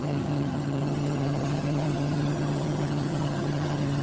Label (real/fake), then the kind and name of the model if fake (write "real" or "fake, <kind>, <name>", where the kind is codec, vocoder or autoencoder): fake, vocoder, HiFi-GAN